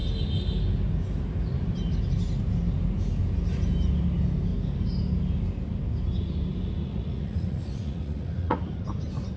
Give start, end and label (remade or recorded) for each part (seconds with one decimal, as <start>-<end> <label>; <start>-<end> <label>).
0.0-6.9 recorded; 6.9-8.8 remade; 8.8-9.4 recorded